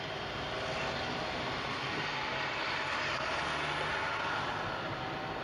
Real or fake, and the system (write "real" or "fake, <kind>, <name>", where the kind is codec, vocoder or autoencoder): real